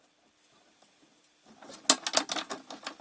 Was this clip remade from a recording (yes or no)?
no